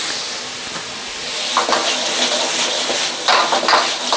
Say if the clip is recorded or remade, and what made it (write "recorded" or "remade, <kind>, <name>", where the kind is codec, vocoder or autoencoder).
recorded